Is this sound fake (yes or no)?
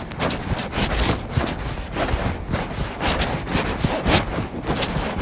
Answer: no